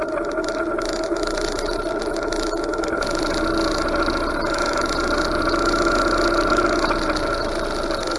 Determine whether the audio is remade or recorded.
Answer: recorded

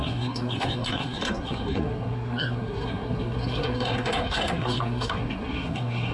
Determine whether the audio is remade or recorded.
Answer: remade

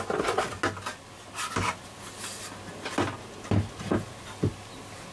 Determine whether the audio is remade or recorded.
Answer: recorded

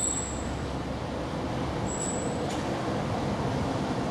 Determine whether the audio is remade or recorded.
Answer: recorded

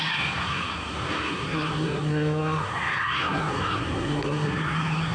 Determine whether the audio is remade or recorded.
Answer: remade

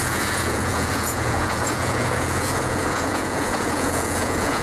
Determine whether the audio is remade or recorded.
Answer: remade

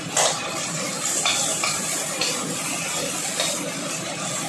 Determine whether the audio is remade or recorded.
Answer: recorded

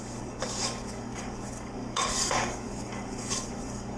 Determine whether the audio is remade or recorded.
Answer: remade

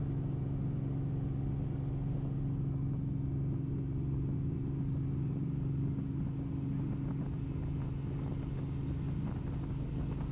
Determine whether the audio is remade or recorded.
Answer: recorded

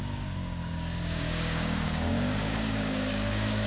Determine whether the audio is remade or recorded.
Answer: remade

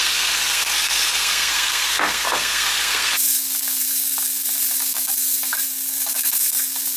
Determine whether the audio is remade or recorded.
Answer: remade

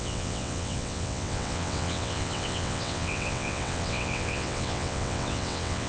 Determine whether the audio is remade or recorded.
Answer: remade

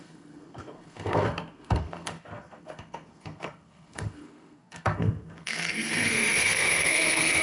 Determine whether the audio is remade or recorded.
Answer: remade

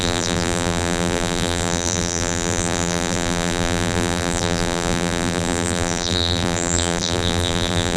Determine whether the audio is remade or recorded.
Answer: remade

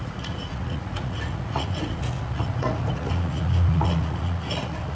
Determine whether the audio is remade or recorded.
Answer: remade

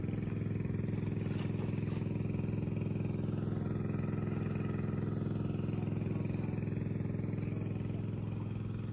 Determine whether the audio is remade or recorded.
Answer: recorded